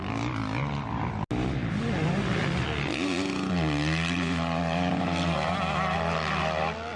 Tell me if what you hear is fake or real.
real